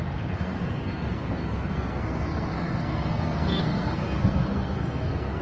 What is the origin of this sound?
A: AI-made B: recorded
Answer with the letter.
A